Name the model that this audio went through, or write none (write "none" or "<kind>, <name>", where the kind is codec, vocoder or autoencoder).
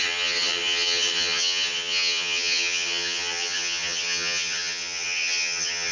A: vocoder, HiFi-GAN